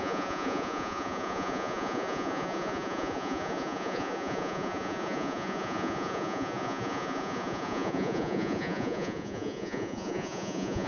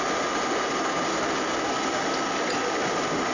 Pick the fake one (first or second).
first